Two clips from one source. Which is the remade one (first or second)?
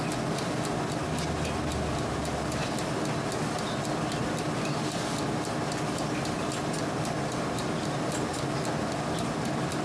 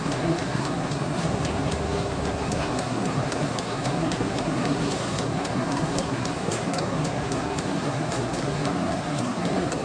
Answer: second